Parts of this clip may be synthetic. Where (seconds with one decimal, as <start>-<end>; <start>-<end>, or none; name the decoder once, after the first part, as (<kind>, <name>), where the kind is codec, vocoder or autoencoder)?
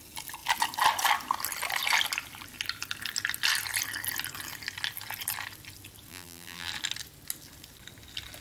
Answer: 6.1-6.7 (vocoder, BigVGAN v2)